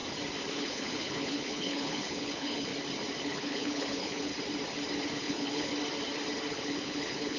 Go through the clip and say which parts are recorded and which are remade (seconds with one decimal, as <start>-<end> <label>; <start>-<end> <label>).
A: 0.0-0.5 recorded; 0.5-2.7 remade; 2.7-3.2 recorded; 3.2-4.3 remade; 4.3-5.1 recorded; 5.1-5.7 remade; 5.7-6.5 recorded; 6.5-7.4 remade